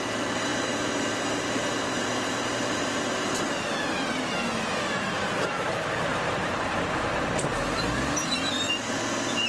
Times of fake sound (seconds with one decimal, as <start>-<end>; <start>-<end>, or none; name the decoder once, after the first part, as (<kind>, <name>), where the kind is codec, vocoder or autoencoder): 0.5-3.0 (vocoder, BigVGAN v2); 6.1-6.7